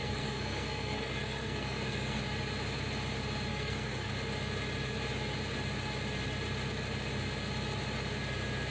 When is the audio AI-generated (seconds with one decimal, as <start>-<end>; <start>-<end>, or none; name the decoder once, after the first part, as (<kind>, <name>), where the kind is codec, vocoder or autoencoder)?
0.0-2.2 (codec, SNAC); 3.5-4.1